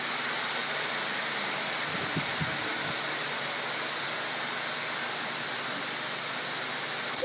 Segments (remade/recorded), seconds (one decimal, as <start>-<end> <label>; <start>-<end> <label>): 0.0-7.2 recorded